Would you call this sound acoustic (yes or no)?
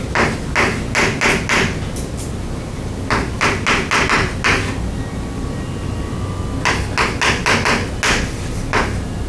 yes